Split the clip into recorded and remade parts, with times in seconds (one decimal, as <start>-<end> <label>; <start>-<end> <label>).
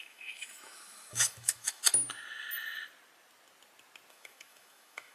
0.0-1.8 remade; 1.8-4.1 recorded; 4.1-5.1 remade